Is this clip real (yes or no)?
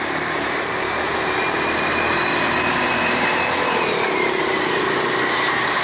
no